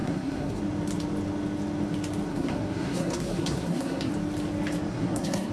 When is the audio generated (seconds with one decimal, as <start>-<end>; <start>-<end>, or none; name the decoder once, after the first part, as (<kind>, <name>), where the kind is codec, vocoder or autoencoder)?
0.0-0.6 (codec, SNAC); 2.3-4.1; 4.9-5.5